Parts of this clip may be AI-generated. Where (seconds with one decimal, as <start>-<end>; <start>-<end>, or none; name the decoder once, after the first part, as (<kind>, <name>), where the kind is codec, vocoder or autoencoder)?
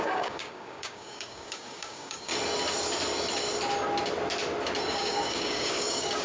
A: 0.0-2.3 (codec, DAC); 4.9-6.2